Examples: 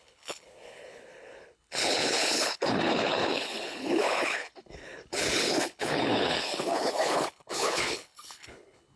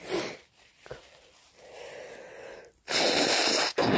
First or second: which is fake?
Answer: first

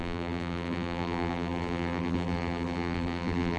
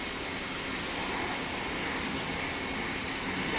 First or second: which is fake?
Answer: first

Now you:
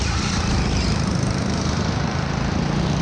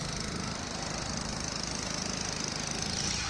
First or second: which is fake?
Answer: first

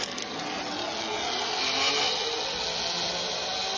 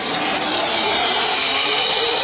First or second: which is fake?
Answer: second